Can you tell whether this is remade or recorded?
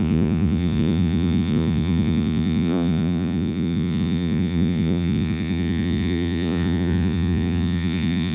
remade